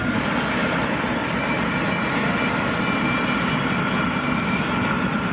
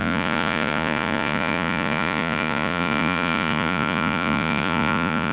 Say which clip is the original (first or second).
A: first